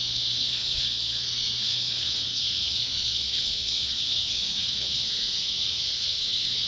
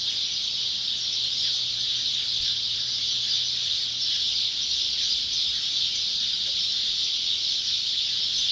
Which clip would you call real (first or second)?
second